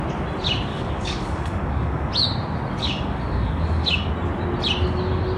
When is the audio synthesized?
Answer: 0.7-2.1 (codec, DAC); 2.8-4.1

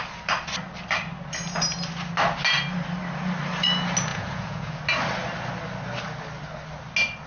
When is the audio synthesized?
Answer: 4.1-4.8 (vocoder, Vocos)